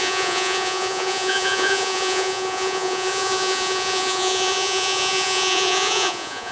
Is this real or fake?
fake